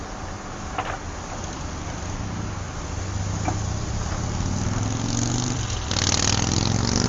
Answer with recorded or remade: recorded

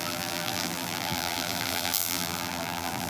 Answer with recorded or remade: remade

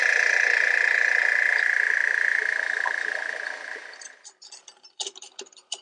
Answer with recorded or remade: remade